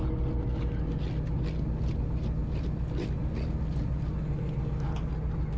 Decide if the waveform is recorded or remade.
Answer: recorded